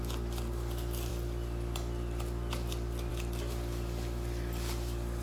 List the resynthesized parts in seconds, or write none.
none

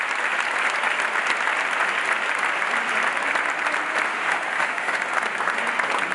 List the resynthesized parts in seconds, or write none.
4.1-5.0 (autoencoder, DAC-VAE)

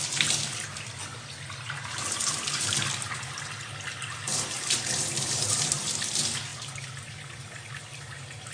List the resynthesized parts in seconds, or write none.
none

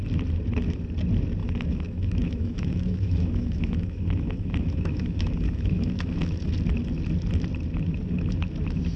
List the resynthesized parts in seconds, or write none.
1.4-6.5 (autoencoder, DAC-VAE)

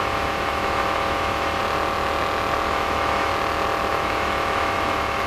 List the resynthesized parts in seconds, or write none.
0.0-1.6 (autoencoder, DAC-VAE); 2.7-3.3; 3.9-5.3